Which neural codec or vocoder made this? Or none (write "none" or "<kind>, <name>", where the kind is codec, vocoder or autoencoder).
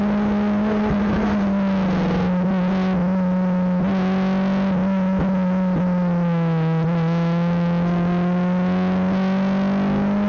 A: none